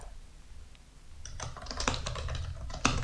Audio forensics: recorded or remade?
recorded